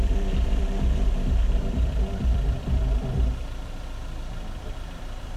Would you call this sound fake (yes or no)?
yes